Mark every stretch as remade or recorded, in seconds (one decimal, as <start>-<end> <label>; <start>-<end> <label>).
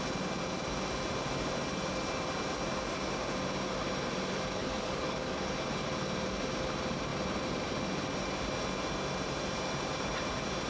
0.0-4.6 recorded; 4.6-5.5 remade; 5.5-10.7 recorded